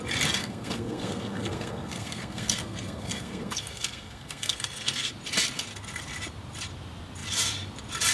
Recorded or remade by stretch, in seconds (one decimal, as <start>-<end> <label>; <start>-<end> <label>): 0.0-0.4 recorded; 0.4-5.1 remade; 5.1-8.1 recorded

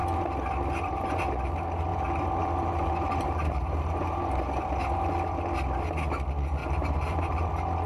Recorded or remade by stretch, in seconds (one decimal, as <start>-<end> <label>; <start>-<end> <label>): 0.0-1.2 remade; 1.2-1.9 recorded; 1.9-4.7 remade; 4.7-6.6 recorded; 6.6-7.5 remade; 7.5-7.9 recorded